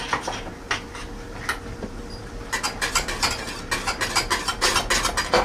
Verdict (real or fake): real